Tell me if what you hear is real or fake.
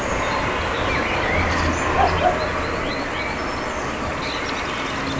real